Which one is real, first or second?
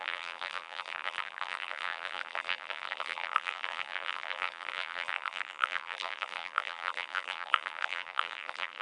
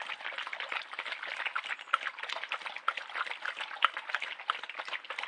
second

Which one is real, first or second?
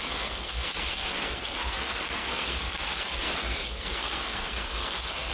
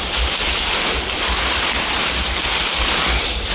second